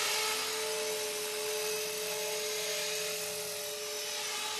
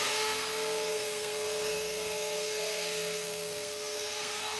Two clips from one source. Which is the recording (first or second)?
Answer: first